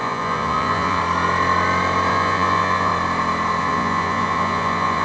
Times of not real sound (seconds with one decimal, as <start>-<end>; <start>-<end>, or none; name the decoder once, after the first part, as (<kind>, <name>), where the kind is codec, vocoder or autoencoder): 0.0-1.0 (vocoder, Vocos); 2.1-2.9; 3.6-5.0